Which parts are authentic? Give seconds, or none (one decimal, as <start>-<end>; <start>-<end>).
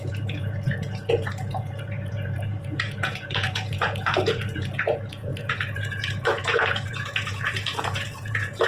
none